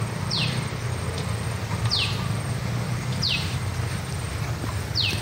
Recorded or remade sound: recorded